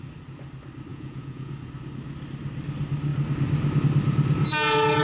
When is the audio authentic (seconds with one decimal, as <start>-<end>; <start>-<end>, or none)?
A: 0.0-0.9; 1.5-5.0